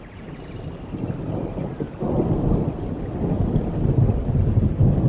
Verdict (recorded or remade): recorded